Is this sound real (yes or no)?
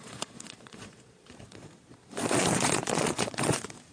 no